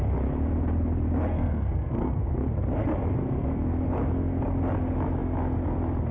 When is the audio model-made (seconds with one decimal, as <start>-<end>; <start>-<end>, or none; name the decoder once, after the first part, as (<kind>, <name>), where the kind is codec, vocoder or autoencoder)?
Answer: 1.3-2.2 (codec, SNAC)